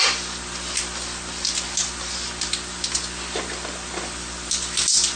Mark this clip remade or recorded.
recorded